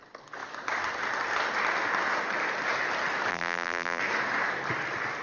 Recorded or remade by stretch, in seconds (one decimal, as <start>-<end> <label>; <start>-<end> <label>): 0.0-3.3 recorded; 3.3-4.0 remade; 4.0-5.2 recorded